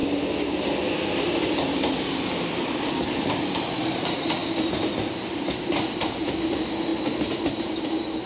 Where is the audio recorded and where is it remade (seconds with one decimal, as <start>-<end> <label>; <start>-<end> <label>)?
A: 0.0-1.5 recorded; 1.5-8.3 remade